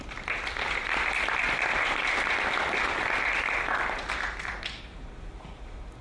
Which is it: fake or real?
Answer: real